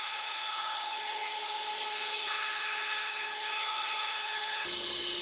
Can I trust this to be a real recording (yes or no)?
no